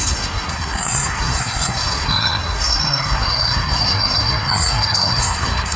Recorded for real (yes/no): no